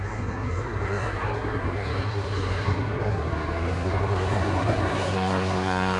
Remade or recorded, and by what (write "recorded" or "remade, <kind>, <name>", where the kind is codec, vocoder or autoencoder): remade, codec, SNAC